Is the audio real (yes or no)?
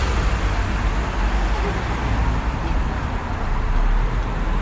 yes